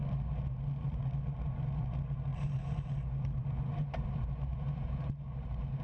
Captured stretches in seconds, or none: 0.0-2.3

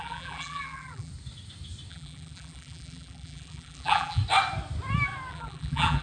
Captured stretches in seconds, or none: 1.1-1.9; 4.2-5.3

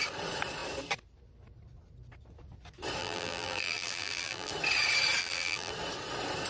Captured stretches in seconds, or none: 0.0-3.0; 4.5-5.2; 5.7-6.5

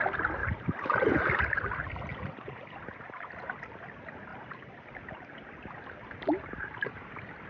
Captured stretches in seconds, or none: 0.0-0.4; 1.4-2.1; 3.2-4.3; 7.1-7.5